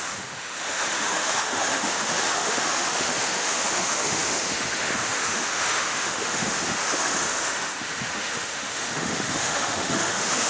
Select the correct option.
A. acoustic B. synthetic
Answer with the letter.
B